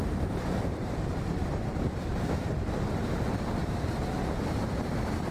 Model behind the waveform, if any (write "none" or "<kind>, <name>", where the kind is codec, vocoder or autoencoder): vocoder, BigVGAN v2